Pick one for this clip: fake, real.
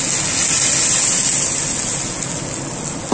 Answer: real